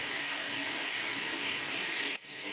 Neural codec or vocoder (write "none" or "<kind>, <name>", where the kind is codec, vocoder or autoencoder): codec, DAC